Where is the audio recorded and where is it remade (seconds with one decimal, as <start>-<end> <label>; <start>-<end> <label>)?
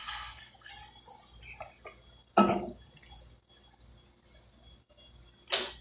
0.0-0.7 remade; 0.7-5.8 recorded